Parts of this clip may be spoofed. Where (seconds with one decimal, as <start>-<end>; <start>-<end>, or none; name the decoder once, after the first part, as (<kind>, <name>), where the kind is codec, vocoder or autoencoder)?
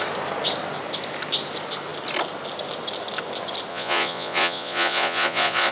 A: 3.7-5.7 (vocoder, Vocos)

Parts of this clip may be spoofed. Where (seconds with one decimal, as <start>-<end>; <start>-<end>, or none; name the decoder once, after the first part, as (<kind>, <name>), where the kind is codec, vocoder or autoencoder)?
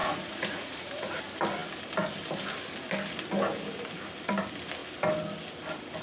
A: 0.0-1.2 (vocoder, Vocos)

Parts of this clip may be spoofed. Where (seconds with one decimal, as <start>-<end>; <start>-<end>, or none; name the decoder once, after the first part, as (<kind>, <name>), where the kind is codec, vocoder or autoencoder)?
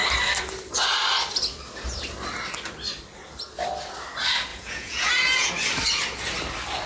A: 4.5-5.5 (vocoder, Vocos)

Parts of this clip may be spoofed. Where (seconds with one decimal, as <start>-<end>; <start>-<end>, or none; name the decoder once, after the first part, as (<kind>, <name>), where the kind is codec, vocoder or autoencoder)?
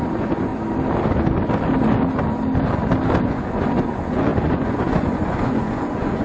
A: 0.0-0.5 (vocoder, Vocos); 3.2-6.2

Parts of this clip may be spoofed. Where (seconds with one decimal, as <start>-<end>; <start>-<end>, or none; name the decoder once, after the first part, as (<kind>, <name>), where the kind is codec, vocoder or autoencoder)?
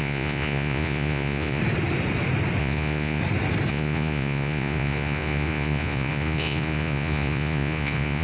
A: 0.0-1.6 (vocoder, Vocos); 2.6-3.2; 3.7-8.2